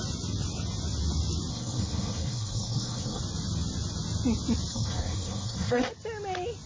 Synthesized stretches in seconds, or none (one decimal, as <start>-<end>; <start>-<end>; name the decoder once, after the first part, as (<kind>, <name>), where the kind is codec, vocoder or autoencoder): 1.5-3.2 (codec, SNAC); 4.7-5.9